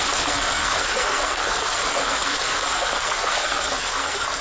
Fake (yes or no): yes